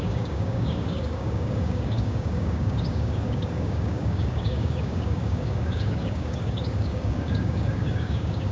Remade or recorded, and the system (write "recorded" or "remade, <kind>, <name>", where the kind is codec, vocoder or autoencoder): remade, codec, DAC